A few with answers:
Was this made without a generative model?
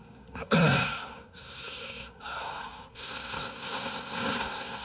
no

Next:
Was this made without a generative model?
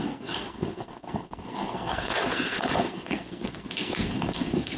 no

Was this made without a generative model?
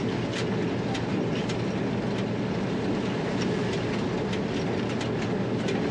yes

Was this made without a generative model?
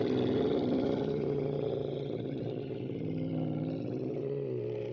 yes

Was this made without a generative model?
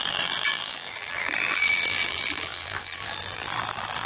no